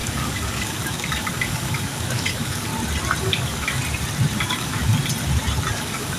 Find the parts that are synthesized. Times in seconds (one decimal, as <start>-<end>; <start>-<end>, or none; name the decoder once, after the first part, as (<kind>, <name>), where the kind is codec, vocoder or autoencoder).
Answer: 0.0-2.7 (codec, DAC); 3.2-3.8; 4.4-4.9; 5.7-6.2